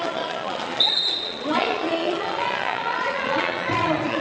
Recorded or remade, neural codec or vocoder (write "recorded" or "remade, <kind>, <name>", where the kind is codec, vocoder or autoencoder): remade, vocoder, Vocos